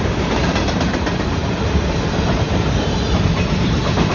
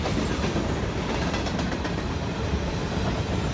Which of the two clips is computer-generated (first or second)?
first